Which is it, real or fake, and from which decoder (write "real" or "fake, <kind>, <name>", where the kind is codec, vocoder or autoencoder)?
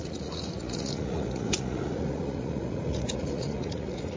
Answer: fake, vocoder, Vocos